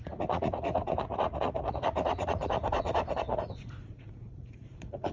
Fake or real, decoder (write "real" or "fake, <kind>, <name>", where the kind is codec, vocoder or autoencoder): fake, vocoder, Vocos